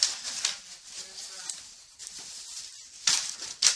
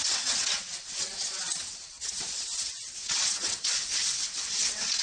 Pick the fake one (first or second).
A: second